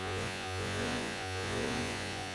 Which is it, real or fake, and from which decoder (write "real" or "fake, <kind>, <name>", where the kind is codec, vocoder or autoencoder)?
fake, vocoder, Vocos